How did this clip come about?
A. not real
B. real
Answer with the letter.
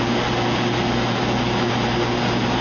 B